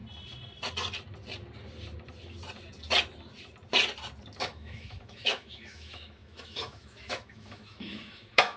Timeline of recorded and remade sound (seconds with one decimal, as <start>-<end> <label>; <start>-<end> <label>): 0.0-4.4 recorded; 4.4-8.6 remade